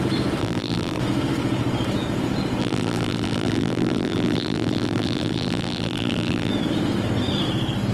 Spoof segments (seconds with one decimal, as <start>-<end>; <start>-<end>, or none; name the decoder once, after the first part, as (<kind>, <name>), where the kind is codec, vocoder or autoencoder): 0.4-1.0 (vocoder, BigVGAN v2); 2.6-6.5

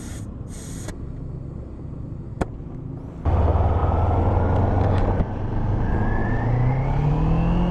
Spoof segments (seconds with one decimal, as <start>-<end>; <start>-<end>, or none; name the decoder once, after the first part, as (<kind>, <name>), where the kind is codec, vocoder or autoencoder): none

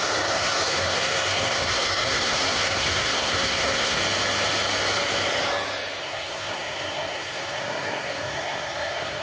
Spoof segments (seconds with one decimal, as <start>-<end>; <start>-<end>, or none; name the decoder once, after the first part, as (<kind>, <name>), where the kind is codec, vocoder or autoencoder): 0.0-4.0 (codec, SNAC); 6.0-9.2

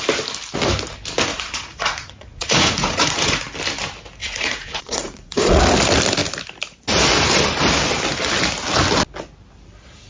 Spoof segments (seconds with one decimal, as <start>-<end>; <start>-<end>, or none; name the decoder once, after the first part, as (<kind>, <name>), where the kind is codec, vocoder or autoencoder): 1.3-3.4 (vocoder, Vocos); 4.2-5.6

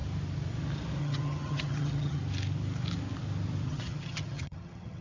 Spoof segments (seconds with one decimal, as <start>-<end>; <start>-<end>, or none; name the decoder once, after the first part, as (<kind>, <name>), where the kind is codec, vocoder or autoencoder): 1.0-2.2 (vocoder, HiFi-GAN); 3.7-5.0

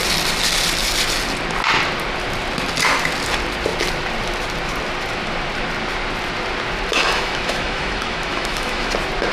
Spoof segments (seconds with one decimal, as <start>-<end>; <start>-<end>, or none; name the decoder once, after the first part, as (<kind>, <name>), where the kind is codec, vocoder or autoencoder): 6.9-8.9 (autoencoder, DAC-VAE)

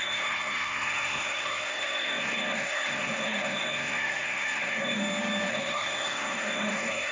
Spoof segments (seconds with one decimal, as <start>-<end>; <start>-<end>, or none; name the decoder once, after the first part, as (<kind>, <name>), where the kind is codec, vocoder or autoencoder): 0.0-5.0 (codec, SNAC); 5.5-7.1